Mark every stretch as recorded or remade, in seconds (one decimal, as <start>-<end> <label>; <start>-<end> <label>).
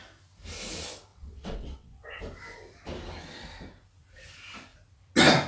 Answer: 0.0-1.1 recorded; 1.1-2.2 remade; 2.2-5.5 recorded